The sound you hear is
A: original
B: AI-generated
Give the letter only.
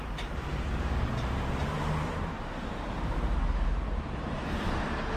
B